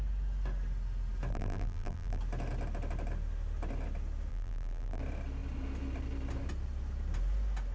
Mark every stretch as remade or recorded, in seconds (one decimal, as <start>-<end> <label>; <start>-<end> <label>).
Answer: 0.0-1.3 recorded; 1.3-2.2 remade; 2.2-4.3 recorded; 4.3-5.0 remade; 5.0-7.7 recorded